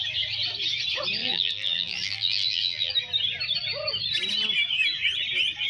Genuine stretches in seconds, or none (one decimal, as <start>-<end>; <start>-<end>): 0.0-1.2; 2.9-5.7

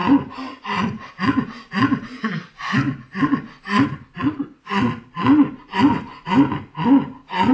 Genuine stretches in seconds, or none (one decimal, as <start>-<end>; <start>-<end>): 0.0-7.5